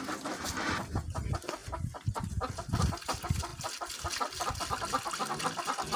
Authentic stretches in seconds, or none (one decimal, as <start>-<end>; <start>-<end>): 0.0-6.0